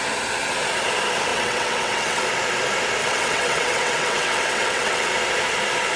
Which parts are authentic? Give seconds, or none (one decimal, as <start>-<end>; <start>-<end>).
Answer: 0.0-1.3; 2.2-3.0; 5.1-6.0